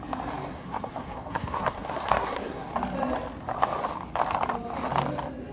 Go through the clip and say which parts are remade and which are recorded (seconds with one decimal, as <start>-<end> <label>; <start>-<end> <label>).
0.0-0.5 recorded; 0.5-2.7 remade; 2.7-5.5 recorded